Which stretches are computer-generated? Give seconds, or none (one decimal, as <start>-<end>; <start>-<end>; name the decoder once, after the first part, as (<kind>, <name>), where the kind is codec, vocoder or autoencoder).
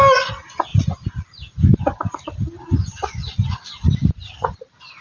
none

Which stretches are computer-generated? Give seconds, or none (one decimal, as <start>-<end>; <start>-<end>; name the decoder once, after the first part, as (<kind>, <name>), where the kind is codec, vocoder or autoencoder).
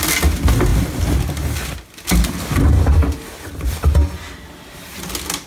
0.7-1.2 (vocoder, BigVGAN v2)